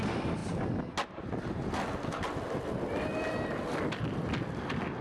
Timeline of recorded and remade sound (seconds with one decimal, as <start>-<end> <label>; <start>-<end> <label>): 0.0-5.0 recorded